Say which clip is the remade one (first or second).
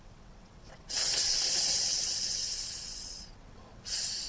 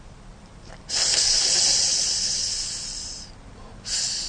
first